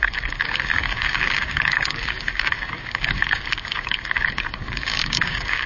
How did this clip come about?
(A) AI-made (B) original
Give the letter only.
A